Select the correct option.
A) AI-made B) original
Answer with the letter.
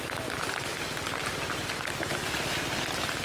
B